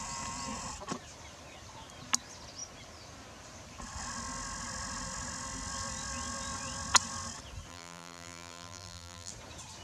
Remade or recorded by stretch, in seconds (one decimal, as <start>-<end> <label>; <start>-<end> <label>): 0.0-7.7 recorded; 7.7-9.3 remade; 9.3-9.8 recorded